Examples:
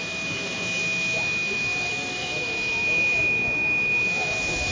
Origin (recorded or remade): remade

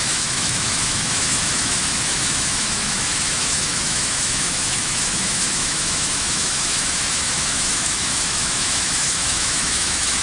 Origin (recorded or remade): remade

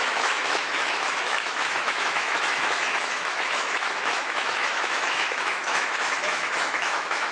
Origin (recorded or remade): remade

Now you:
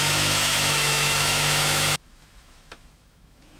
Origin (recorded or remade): remade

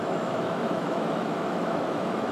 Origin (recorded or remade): remade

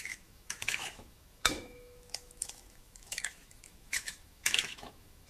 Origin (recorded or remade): remade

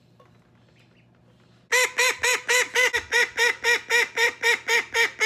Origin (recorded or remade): recorded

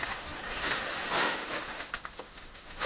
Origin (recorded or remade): remade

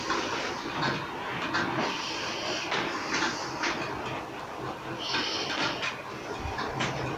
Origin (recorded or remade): recorded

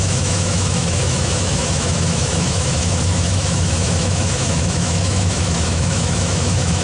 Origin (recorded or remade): remade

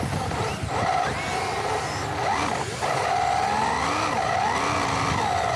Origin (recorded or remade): recorded